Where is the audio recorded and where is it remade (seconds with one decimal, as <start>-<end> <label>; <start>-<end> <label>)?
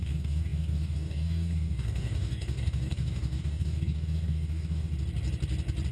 0.0-4.9 remade; 4.9-5.9 recorded